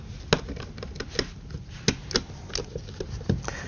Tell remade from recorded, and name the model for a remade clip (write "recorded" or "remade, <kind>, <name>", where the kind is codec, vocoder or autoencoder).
recorded